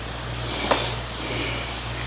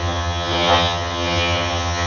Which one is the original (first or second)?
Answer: first